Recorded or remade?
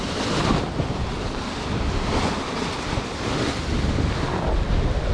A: recorded